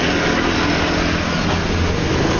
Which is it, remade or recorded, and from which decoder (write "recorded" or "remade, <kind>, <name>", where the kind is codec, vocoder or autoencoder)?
recorded